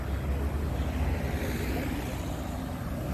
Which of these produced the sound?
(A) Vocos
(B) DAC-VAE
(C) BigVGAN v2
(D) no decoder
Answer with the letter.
D